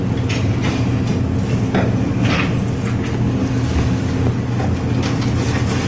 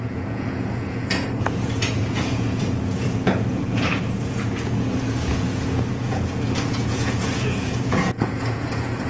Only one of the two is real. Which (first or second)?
first